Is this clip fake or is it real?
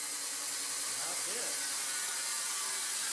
fake